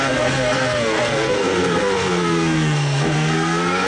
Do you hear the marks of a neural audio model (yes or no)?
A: yes